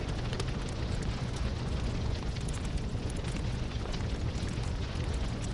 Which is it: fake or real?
fake